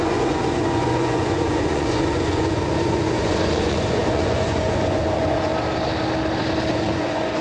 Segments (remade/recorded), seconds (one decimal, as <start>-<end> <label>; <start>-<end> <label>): 0.0-5.5 remade; 5.5-6.7 recorded; 6.7-7.4 remade